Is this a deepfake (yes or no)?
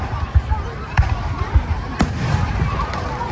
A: yes